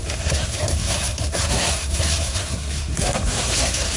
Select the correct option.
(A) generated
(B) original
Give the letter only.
A